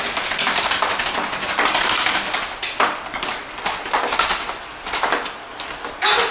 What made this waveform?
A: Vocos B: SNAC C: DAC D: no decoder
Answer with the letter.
D